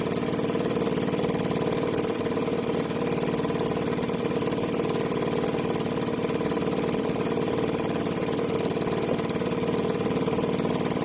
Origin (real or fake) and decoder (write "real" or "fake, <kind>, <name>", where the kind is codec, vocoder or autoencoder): fake, vocoder, BigVGAN v2